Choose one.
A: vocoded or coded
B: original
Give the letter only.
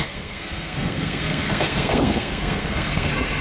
A